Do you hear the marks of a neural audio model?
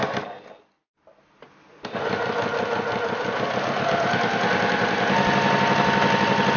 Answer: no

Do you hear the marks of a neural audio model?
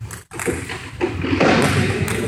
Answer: no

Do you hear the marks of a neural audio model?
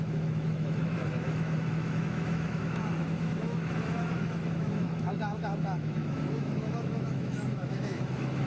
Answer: yes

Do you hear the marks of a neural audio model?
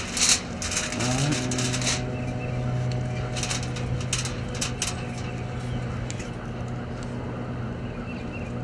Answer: no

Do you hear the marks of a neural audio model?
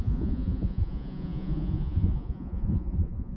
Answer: yes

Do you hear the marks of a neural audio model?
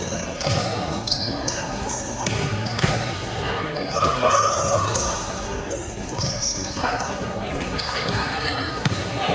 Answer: yes